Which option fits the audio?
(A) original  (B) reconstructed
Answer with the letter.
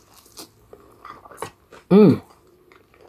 A